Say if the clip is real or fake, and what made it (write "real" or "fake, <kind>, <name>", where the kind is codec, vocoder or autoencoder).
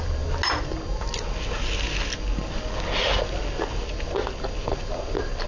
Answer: real